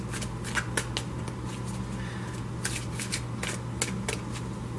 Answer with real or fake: real